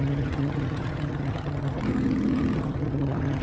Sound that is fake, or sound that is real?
fake